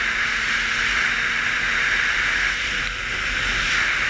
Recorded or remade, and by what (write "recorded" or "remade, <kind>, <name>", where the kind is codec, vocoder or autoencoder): recorded